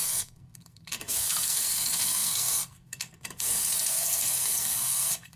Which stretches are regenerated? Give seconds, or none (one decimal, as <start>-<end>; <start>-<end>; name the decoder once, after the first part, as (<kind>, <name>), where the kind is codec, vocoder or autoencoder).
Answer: 0.0-5.4 (codec, SNAC)